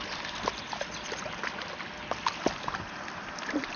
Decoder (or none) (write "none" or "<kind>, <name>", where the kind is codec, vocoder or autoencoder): none